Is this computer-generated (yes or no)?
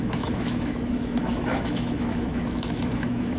yes